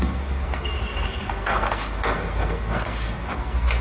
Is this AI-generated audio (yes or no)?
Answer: yes